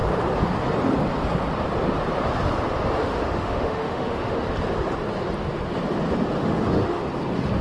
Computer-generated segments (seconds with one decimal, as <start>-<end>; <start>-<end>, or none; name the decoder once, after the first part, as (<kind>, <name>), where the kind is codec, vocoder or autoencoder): 3.0-4.4 (autoencoder, DAC-VAE); 6.4-7.0